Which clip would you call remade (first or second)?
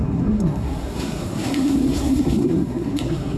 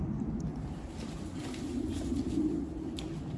first